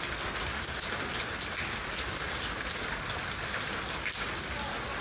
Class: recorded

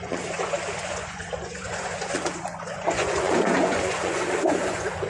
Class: remade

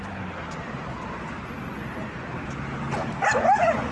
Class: recorded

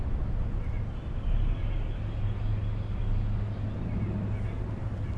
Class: recorded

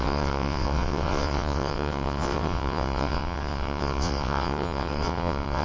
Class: remade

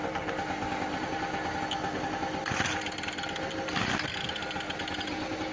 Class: recorded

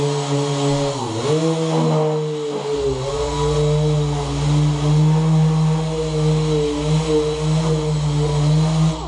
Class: recorded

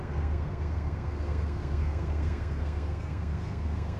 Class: remade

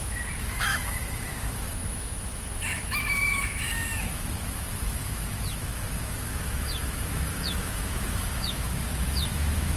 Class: remade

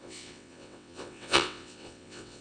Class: remade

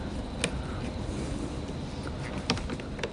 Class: recorded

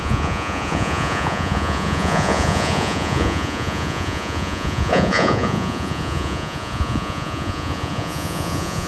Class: remade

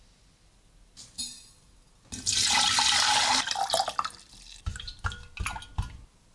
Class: recorded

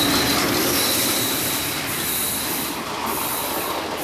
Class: recorded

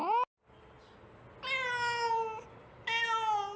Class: recorded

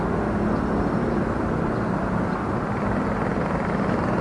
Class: recorded